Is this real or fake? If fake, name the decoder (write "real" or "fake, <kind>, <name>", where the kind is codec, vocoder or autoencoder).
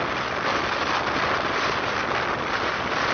real